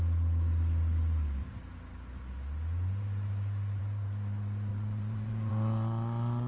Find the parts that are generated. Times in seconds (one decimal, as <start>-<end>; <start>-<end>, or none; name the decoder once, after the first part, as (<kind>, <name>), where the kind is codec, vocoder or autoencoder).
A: 4.7-5.5 (vocoder, Vocos)

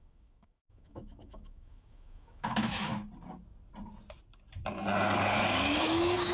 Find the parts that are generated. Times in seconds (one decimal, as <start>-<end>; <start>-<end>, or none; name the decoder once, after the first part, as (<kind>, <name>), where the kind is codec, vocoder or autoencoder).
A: 0.0-2.9 (autoencoder, DAC-VAE); 5.8-6.3

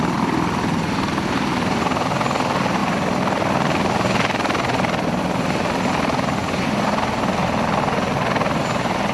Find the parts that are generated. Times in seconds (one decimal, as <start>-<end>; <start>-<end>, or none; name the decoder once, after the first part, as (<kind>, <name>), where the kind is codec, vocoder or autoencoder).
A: none

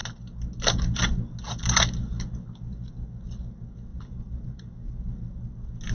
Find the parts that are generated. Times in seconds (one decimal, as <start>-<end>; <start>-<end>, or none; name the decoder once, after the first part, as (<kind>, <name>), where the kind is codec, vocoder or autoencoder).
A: 3.9-4.9 (vocoder, BigVGAN v2)

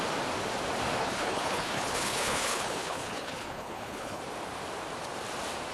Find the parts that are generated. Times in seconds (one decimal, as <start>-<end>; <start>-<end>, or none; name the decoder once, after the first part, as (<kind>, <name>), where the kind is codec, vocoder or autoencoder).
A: 1.0-4.2 (codec, HILCodec)

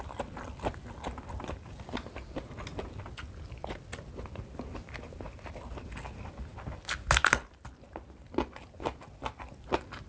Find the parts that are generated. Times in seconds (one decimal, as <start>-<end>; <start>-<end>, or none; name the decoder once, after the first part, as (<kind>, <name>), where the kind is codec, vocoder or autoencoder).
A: none

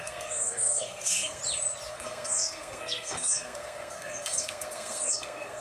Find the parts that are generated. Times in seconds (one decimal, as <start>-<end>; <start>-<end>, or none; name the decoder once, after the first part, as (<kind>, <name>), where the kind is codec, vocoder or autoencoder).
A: 0.0-1.4 (codec, SNAC); 1.9-5.6